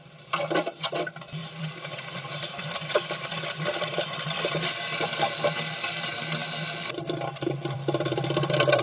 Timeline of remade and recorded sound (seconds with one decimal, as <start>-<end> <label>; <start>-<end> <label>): 0.0-8.8 remade